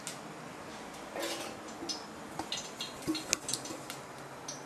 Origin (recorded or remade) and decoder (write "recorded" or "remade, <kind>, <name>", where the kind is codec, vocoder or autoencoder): recorded